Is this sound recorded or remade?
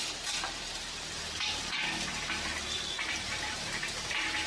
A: recorded